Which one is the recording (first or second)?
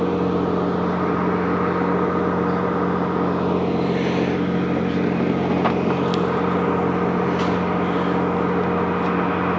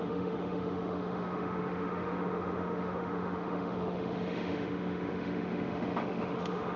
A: first